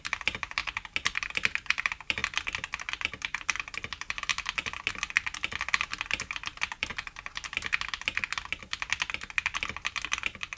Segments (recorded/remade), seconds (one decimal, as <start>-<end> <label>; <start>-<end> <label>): 0.0-0.6 remade; 0.6-1.2 recorded; 1.2-2.2 remade; 2.2-2.8 recorded; 2.8-4.3 remade; 4.3-4.9 recorded; 4.9-6.9 remade; 6.9-9.9 recorded; 9.9-10.6 remade

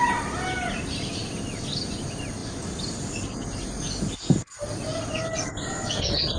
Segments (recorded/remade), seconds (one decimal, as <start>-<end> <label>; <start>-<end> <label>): 0.0-6.4 recorded

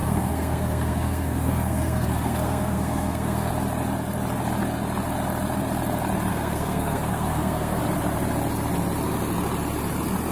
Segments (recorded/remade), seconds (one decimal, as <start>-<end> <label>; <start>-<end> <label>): 0.0-3.5 remade; 3.5-6.3 recorded; 6.3-7.8 remade; 7.8-10.3 recorded